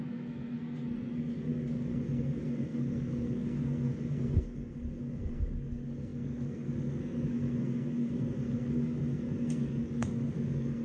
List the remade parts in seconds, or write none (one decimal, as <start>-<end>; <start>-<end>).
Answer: 0.0-10.8